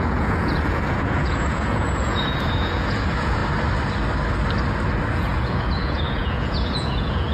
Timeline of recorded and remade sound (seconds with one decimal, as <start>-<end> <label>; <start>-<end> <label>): 0.0-3.4 remade; 3.4-5.1 recorded; 5.1-7.3 remade